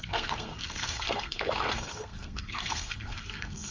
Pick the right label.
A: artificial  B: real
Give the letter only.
A